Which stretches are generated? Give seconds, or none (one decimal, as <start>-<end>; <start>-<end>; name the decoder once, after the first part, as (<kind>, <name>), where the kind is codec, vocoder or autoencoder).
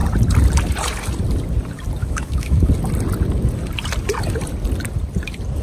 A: 2.0-2.7 (autoencoder, DAC-VAE)